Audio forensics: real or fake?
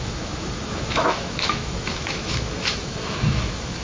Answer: fake